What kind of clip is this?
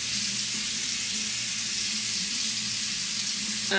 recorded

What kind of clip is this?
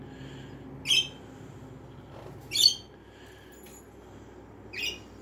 recorded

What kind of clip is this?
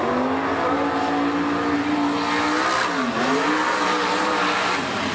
recorded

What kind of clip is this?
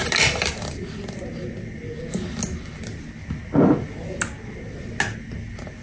recorded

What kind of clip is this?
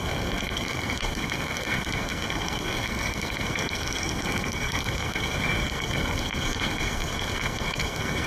remade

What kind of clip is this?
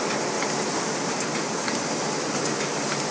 recorded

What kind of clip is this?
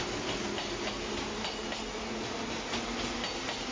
recorded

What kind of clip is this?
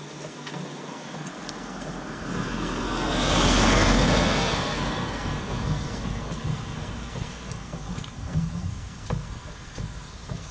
remade